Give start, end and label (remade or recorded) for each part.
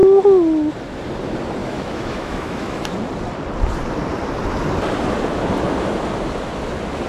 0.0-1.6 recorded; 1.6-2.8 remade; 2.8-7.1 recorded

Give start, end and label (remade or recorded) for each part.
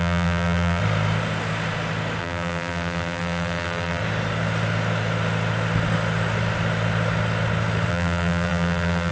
0.0-0.8 remade; 0.8-2.2 recorded; 2.2-4.0 remade; 4.0-7.9 recorded; 7.9-9.1 remade